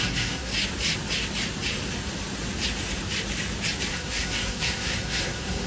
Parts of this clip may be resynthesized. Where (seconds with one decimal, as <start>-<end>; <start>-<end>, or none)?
0.0-0.5; 3.9-5.7